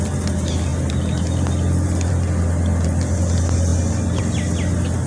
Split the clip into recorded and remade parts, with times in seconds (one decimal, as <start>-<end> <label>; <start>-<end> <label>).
0.0-5.1 recorded